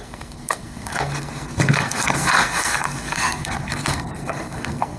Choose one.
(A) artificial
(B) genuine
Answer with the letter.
A